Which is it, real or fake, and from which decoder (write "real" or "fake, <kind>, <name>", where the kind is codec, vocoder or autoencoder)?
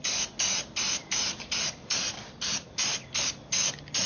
real